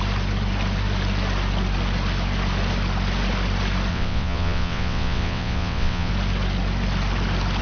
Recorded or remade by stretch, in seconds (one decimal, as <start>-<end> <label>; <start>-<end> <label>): 0.0-3.9 recorded; 3.9-6.1 remade; 6.1-7.6 recorded